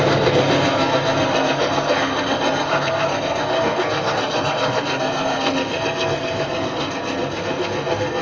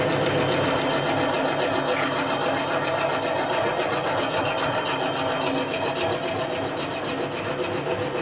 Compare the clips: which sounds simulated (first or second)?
first